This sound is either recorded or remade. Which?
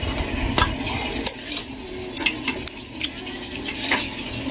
recorded